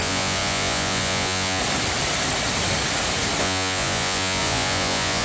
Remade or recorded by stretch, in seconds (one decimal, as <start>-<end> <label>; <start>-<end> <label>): 0.0-1.6 remade; 1.6-3.4 recorded; 3.4-5.2 remade

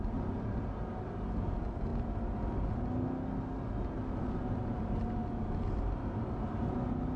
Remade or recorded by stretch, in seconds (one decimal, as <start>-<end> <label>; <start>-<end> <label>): 0.0-7.2 recorded

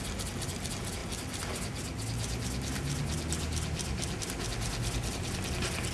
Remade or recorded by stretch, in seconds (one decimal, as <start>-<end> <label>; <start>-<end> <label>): 0.0-5.9 recorded

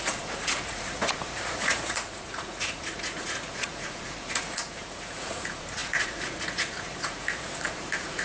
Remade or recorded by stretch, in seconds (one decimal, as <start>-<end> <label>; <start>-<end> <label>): 0.0-8.2 remade